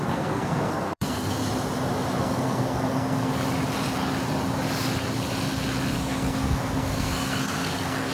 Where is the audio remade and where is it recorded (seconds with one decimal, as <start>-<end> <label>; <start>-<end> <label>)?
0.0-1.4 remade; 1.4-2.2 recorded; 2.2-3.3 remade; 3.3-5.9 recorded; 5.9-8.1 remade

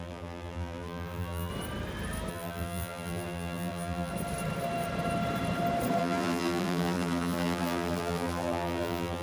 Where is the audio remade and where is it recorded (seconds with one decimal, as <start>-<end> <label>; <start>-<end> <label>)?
0.0-1.5 remade; 1.5-2.3 recorded; 2.3-4.1 remade; 4.1-6.0 recorded; 6.0-9.2 remade

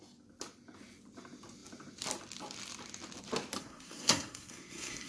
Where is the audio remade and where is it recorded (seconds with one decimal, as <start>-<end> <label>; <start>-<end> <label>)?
0.0-3.6 recorded; 3.6-5.1 remade

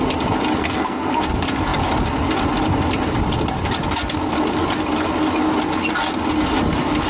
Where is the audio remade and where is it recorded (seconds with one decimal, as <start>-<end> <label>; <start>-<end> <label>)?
0.0-0.6 recorded; 0.6-1.2 remade; 1.2-7.1 recorded

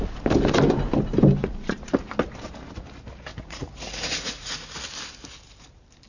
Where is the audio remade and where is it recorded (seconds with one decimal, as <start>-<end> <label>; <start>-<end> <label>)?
0.0-1.4 recorded; 1.4-1.9 remade; 1.9-3.3 recorded; 3.3-4.7 remade; 4.7-6.1 recorded

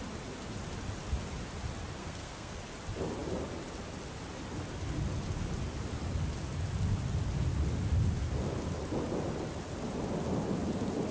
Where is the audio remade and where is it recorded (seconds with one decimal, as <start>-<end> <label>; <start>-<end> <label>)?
0.0-2.0 recorded; 2.0-2.6 remade; 2.6-11.1 recorded